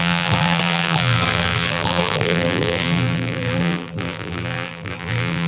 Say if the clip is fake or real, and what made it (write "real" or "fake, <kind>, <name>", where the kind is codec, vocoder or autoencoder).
fake, vocoder, BigVGAN v2